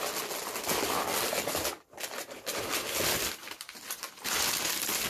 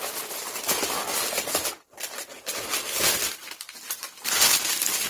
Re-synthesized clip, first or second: second